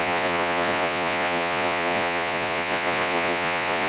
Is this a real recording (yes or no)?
no